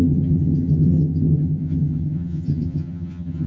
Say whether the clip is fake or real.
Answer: fake